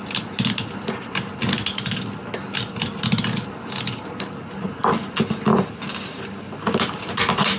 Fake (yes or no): no